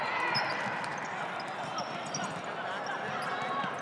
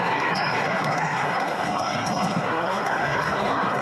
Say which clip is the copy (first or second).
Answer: second